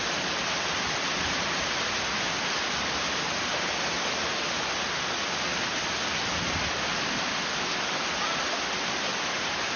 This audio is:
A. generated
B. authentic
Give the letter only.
B